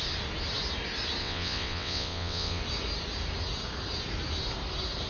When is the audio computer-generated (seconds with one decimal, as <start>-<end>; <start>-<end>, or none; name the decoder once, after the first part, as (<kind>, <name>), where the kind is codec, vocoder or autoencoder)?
1.2-2.6 (vocoder, WaveNeXt)